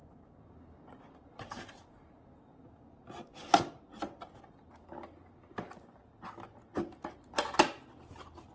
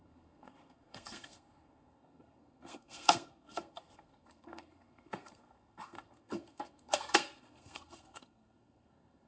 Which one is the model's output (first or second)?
second